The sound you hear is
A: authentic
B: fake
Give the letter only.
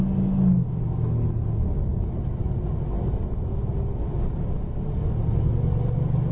A